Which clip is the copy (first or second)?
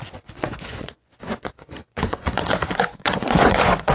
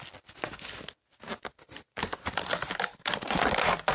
first